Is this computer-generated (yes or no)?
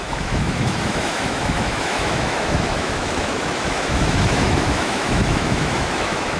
yes